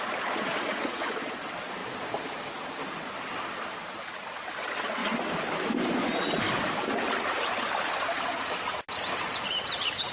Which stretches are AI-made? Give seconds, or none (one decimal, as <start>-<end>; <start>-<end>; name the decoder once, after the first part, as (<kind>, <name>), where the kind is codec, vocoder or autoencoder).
0.0-1.8 (vocoder, Vocos); 4.6-5.0